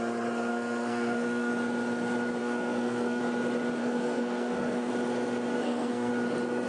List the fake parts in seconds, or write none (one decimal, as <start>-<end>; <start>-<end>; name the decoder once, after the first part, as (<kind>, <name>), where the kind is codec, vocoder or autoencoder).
0.5-1.5 (codec, SNAC); 2.4-3.2; 3.8-4.9; 5.5-6.1